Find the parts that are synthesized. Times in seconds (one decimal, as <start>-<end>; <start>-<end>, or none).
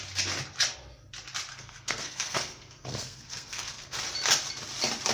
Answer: 1.5-4.0